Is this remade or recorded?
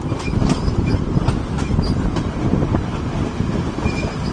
recorded